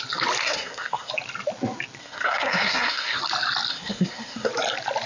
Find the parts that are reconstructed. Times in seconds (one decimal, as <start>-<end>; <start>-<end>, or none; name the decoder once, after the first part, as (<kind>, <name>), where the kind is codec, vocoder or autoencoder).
0.4-1.1 (codec, SNAC); 2.0-3.2; 3.7-4.5